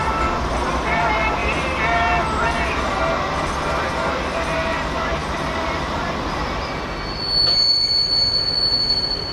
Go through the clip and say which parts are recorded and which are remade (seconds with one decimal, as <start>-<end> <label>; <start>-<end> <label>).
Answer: 0.0-9.3 recorded